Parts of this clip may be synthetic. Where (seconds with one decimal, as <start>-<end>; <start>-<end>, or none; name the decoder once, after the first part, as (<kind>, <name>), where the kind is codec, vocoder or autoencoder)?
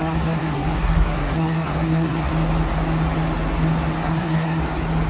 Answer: 0.0-2.3 (codec, SNAC); 4.0-4.6